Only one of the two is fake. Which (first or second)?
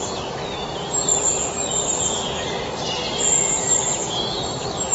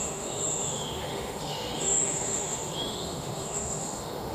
second